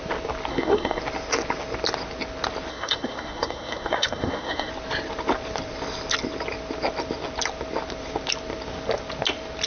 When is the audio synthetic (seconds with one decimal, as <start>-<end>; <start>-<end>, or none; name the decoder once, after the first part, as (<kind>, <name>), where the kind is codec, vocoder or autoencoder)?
0.5-1.0 (codec, SNAC); 2.7-4.7